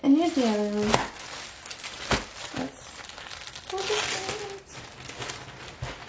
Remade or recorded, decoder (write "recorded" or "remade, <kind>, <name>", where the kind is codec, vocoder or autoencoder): recorded